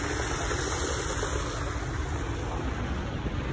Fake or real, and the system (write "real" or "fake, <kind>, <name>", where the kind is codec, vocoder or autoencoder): real